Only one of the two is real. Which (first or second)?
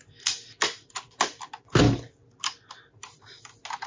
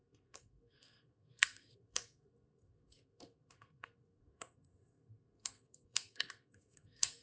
first